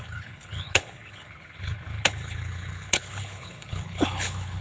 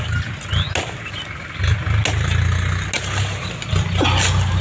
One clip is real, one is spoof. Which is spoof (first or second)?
first